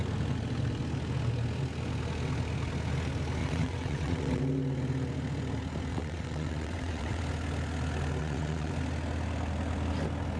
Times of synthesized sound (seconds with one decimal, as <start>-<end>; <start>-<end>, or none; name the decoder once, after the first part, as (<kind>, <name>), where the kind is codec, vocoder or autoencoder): 3.4-4.4 (vocoder, WaveNeXt); 5.9-7.2; 8.2-8.7